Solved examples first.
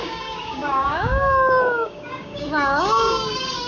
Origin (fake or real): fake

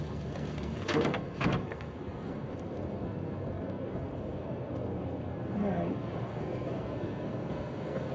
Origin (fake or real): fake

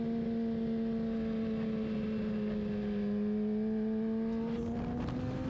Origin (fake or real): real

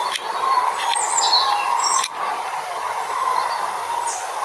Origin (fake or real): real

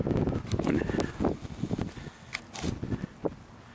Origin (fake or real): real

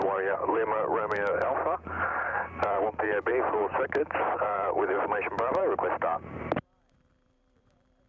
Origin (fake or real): fake